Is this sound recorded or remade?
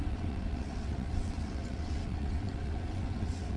remade